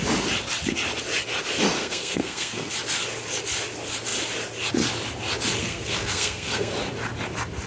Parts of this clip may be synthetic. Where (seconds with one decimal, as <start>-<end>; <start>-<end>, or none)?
1.8-2.7; 5.6-6.7